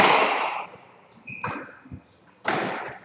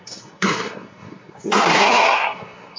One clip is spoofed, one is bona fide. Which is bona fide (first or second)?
first